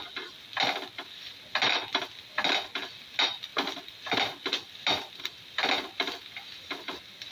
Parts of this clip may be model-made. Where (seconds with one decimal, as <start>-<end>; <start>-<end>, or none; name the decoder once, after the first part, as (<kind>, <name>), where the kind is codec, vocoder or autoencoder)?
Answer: none